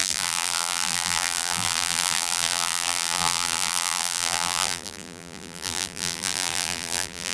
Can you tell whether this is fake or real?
fake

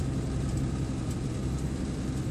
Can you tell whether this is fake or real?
fake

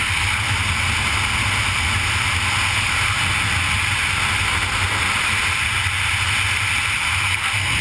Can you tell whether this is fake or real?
real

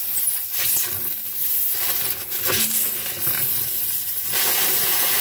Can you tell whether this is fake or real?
fake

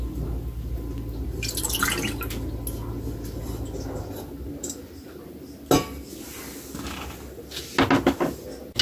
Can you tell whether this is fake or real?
real